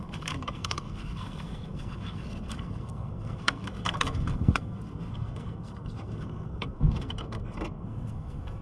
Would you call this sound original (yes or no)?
no